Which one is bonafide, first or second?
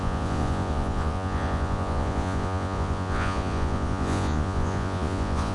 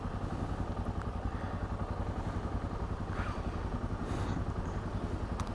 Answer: second